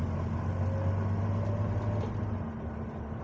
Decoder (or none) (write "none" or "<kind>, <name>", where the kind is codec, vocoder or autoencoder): none